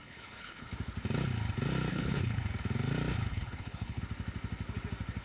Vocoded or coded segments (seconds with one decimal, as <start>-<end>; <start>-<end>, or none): 0.0-0.7; 1.9-2.4; 3.3-4.0